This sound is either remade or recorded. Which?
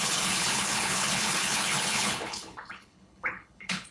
remade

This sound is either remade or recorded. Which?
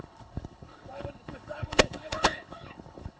remade